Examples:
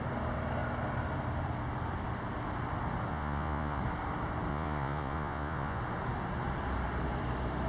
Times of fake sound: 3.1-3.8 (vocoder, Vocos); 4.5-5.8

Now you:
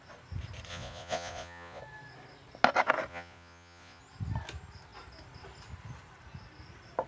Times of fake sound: 0.7-1.8 (vocoder, Vocos); 3.1-4.0

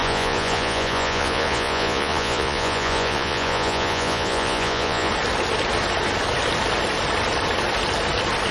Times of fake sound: 0.0-5.1 (vocoder, Vocos)

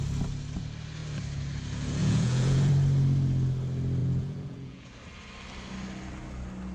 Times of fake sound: 2.0-2.7 (vocoder, Vocos); 4.0-4.9

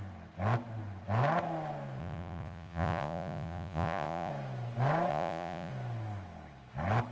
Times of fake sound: 2.0-4.3 (vocoder, Vocos); 5.1-5.7

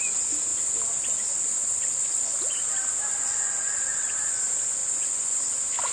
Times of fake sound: 3.2-3.7 (vocoder, Vocos); 4.8-5.4